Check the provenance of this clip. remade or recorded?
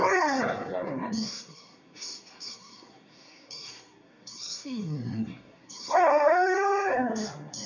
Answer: remade